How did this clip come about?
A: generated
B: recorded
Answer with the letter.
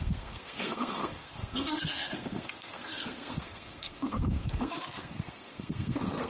A